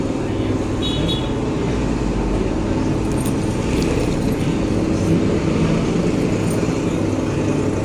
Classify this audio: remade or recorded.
recorded